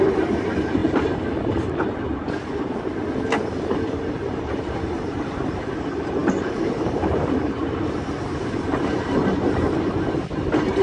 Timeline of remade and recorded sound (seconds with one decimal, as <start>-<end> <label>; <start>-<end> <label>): 0.0-0.8 remade; 0.8-4.6 recorded; 4.6-10.8 remade